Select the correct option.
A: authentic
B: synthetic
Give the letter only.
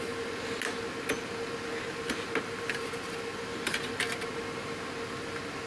A